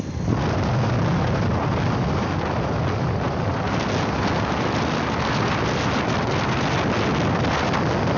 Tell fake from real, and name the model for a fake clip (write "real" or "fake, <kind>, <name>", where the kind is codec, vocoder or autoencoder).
real